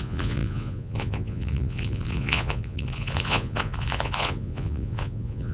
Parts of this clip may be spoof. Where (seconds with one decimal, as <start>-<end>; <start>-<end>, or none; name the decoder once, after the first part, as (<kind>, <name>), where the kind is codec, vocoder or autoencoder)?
0.0-5.5 (vocoder, Vocos)